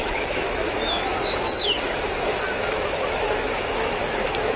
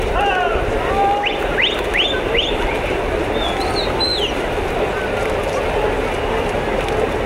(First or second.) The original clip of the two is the second